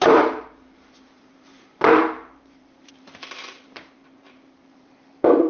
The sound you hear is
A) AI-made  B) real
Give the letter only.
A